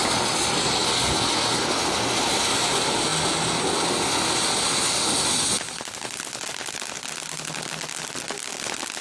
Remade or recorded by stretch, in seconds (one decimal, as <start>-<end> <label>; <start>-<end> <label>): 0.0-9.0 recorded